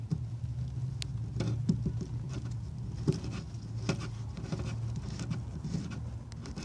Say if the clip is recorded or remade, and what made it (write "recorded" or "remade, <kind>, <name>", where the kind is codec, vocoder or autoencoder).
recorded